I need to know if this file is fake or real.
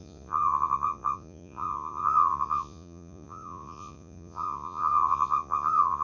fake